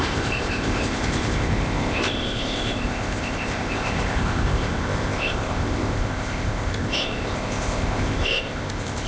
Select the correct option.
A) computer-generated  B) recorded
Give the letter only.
A